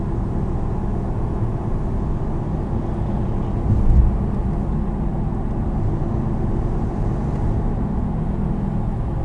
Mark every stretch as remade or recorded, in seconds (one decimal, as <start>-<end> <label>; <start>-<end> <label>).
0.0-9.2 recorded